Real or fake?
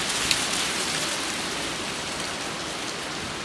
real